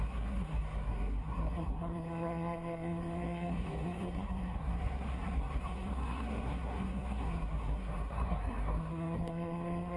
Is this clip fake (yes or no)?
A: yes